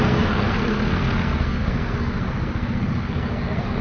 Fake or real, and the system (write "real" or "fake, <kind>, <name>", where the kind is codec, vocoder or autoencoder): fake, codec, SNAC